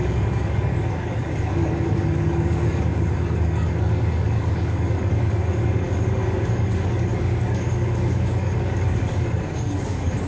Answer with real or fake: fake